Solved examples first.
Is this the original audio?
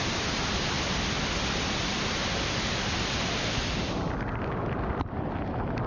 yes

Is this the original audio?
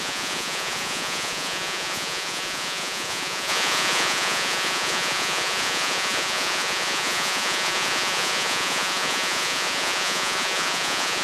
no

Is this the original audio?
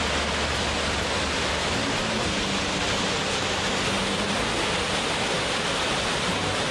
yes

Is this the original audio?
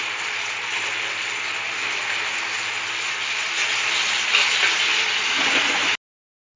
yes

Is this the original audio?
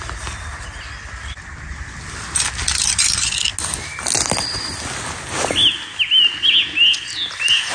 yes